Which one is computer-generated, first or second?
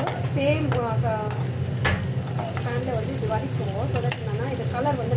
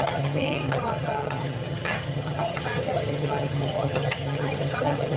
second